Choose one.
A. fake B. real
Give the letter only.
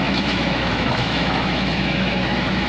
A